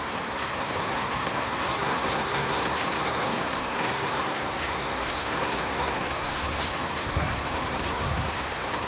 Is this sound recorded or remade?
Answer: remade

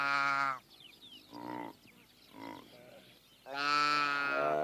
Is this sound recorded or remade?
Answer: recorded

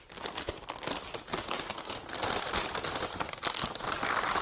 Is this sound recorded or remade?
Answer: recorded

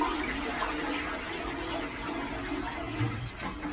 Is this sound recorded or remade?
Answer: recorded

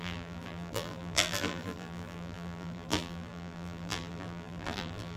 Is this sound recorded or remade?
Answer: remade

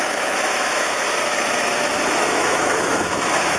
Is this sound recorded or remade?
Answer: remade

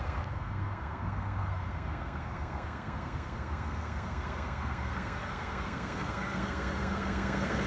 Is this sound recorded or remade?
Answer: remade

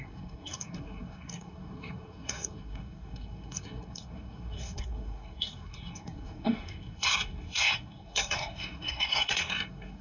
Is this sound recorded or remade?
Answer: remade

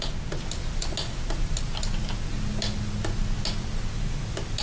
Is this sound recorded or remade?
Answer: recorded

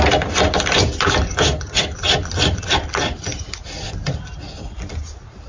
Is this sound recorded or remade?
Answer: recorded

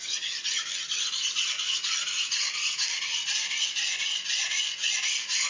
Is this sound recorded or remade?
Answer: recorded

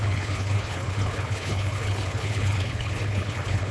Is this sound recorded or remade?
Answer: remade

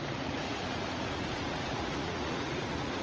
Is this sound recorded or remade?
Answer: remade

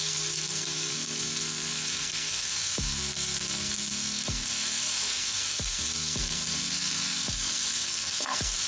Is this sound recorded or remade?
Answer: remade